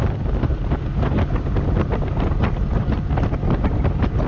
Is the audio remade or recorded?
recorded